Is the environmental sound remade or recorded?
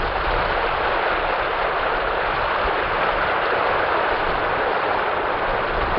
recorded